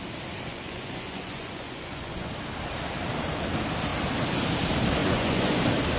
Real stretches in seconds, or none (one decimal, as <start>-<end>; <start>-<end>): 0.0-0.5; 2.3-5.0; 5.6-6.0